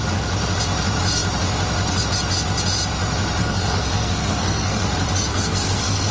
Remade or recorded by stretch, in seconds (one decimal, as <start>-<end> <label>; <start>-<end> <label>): 0.0-3.4 recorded; 3.4-4.8 remade; 4.8-5.3 recorded; 5.3-6.1 remade

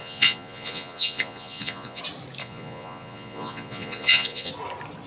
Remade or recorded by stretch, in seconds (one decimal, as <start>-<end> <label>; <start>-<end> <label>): 0.0-2.0 remade; 2.0-2.4 recorded; 2.4-4.5 remade; 4.5-5.1 recorded

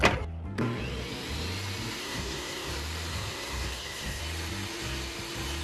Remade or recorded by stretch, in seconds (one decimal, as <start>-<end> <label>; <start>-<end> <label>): 0.0-2.0 recorded; 2.0-2.7 remade; 2.7-3.1 recorded; 3.1-4.2 remade; 4.2-5.6 recorded

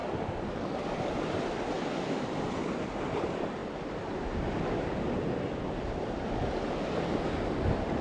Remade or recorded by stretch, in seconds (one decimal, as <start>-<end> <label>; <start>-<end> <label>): 0.0-8.0 recorded

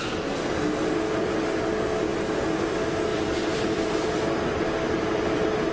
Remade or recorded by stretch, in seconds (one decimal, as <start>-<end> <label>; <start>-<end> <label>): 0.0-3.1 recorded; 3.1-5.7 remade